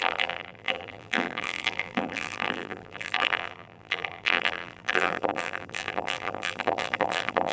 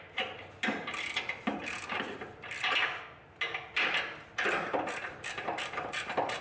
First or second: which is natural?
second